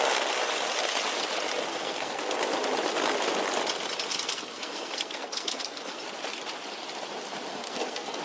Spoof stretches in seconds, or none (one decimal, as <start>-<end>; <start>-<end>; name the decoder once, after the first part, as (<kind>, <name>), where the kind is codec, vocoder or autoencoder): 1.7-2.2 (codec, SNAC); 4.1-6.0; 7.5-8.2